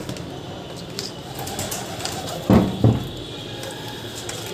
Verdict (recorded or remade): recorded